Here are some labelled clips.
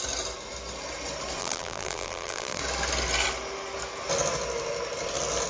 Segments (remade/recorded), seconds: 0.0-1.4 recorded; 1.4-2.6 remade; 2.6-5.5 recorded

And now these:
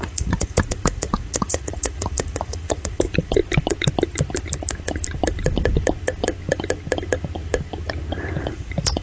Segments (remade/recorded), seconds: 0.0-3.4 remade; 3.4-8.4 recorded; 8.4-9.0 remade

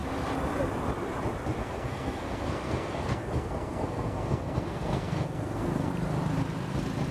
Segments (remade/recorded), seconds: 0.0-1.6 recorded; 1.6-5.9 remade; 5.9-7.1 recorded